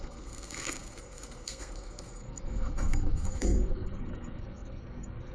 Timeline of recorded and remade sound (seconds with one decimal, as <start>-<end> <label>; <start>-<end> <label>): 0.0-5.3 remade